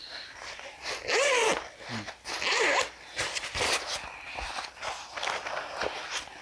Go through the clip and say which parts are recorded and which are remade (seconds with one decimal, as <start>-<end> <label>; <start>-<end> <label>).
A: 0.0-0.8 remade; 0.8-6.4 recorded